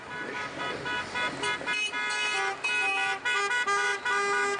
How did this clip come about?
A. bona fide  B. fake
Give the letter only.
A